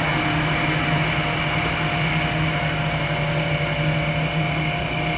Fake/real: real